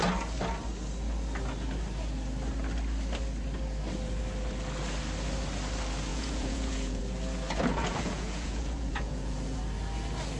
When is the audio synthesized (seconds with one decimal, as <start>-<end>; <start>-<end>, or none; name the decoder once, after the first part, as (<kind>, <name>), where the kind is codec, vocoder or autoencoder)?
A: 6.1-7.0 (vocoder, Vocos); 7.7-9.6